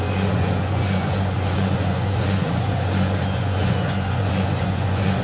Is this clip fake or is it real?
fake